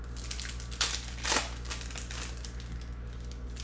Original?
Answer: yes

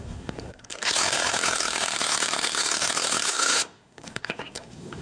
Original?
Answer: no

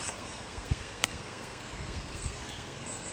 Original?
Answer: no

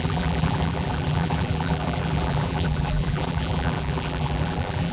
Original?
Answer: no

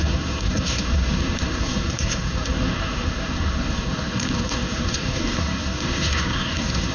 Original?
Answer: no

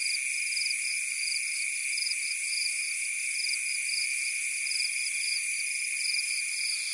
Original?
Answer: yes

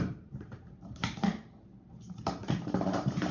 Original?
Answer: no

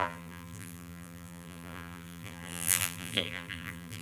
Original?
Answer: no